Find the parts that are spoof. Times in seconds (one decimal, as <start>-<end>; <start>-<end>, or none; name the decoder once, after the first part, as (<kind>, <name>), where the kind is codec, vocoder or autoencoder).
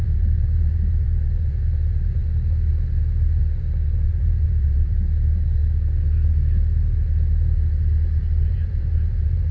0.0-2.2 (vocoder, BigVGAN v2); 3.4-5.6; 8.2-9.5